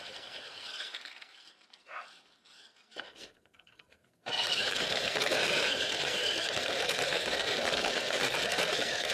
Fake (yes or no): yes